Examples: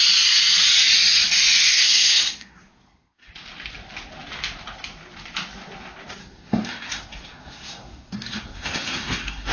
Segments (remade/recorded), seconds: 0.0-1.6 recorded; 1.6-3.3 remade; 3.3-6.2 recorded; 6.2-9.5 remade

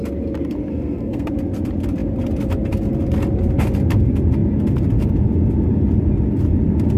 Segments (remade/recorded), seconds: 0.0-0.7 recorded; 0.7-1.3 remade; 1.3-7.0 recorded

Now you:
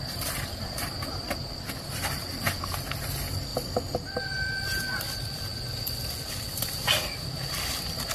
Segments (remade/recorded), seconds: 0.0-8.1 recorded

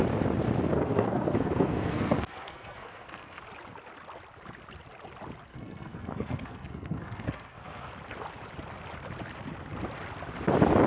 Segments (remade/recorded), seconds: 0.0-0.7 recorded; 0.7-3.4 remade; 3.4-5.5 recorded; 5.5-7.9 remade; 7.9-10.9 recorded

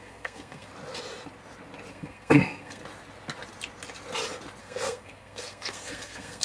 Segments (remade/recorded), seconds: 0.0-0.7 remade; 0.7-1.9 recorded; 1.9-2.8 remade; 2.8-4.6 recorded; 4.6-6.4 remade

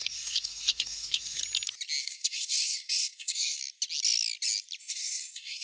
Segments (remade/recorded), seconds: 0.0-1.4 remade; 1.4-2.0 recorded; 2.0-3.6 remade; 3.6-4.8 recorded; 4.8-5.6 remade